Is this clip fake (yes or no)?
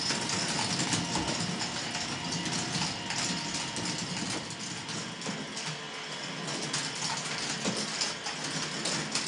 no